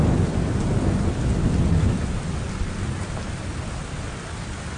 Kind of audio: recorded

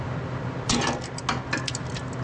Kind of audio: recorded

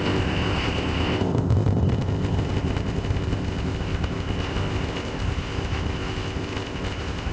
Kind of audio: remade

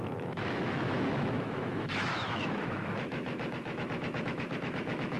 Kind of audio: remade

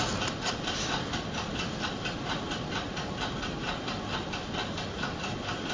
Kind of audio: recorded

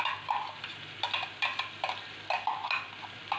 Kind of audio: recorded